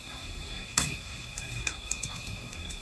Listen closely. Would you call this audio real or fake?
fake